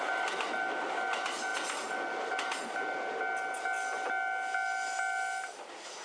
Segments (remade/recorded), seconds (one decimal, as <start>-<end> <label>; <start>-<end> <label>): 0.0-6.0 recorded